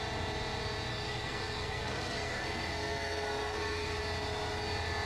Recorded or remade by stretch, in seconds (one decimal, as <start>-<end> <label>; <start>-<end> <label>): 0.0-0.9 recorded; 0.9-4.0 remade; 4.0-5.1 recorded